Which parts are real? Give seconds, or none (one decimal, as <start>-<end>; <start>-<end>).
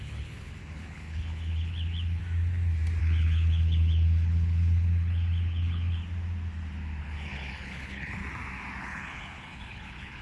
2.2-3.0; 6.0-7.0; 8.2-8.8